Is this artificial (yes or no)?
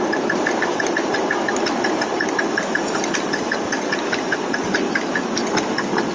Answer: no